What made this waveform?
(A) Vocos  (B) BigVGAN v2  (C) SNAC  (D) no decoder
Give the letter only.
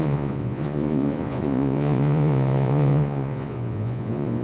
A